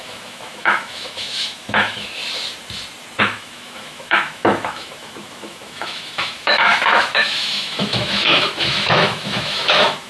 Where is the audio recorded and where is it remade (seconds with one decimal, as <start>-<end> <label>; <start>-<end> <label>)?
0.0-2.2 remade; 2.2-3.2 recorded; 3.2-10.1 remade